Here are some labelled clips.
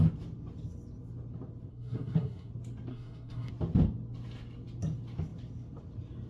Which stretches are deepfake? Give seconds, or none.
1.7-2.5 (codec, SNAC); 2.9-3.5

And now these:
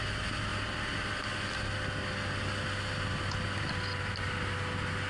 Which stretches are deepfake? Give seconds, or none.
none

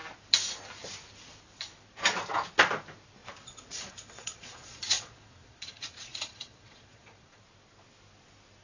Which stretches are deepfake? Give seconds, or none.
3.2-7.4 (vocoder, Vocos)

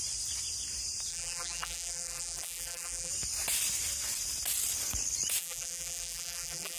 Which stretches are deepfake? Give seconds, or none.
1.1-3.1 (vocoder, BigVGAN v2); 5.4-6.8